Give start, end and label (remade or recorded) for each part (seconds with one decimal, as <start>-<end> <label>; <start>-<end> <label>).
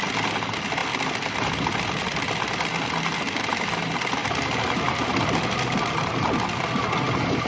0.0-7.5 recorded